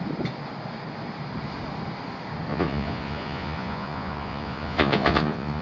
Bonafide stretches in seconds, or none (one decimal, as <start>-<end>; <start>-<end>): 0.0-2.5